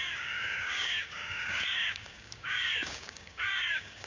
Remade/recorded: remade